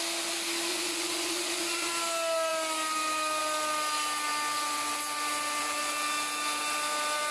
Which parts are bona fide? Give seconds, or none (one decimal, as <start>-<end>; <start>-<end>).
0.0-0.7; 1.9-7.3